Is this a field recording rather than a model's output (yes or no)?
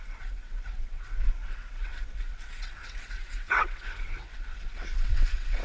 no